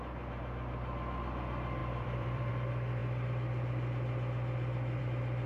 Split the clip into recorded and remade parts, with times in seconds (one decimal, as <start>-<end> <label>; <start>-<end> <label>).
0.0-1.8 recorded; 1.8-2.5 remade; 2.5-5.5 recorded